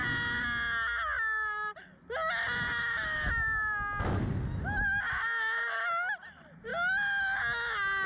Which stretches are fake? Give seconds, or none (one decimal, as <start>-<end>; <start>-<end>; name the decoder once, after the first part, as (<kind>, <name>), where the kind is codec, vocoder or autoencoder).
none